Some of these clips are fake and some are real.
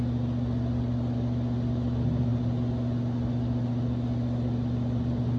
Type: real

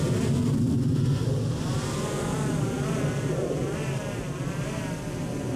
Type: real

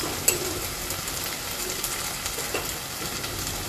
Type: real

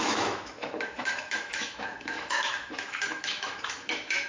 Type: fake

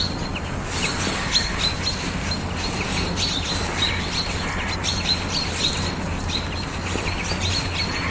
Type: real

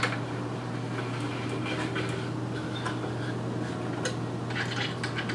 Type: real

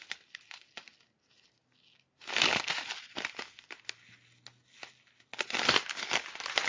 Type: real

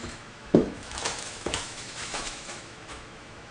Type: fake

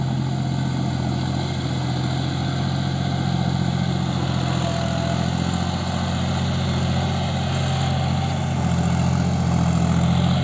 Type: real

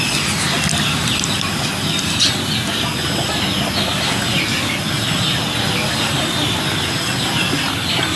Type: real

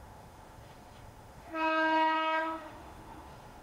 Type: fake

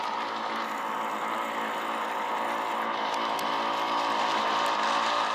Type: real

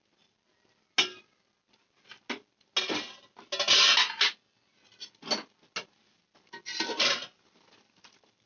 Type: real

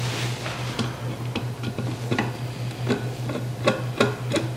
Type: real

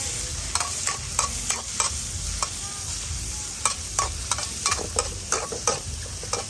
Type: real